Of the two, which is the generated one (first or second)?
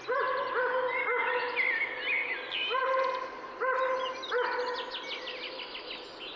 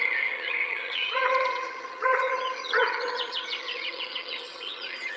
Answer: second